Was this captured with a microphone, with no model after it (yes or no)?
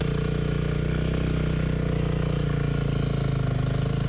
yes